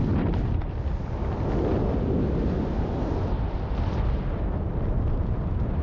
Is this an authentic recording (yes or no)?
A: yes